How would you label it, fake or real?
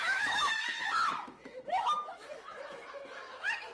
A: fake